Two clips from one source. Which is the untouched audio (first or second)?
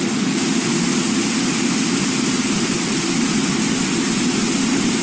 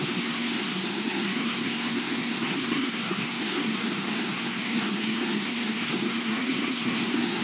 first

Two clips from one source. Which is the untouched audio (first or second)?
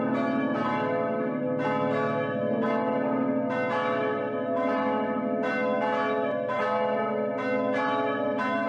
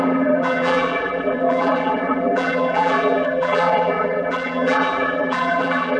first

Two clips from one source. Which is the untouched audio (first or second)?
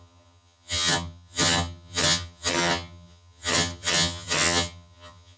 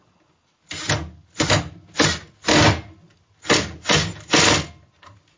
second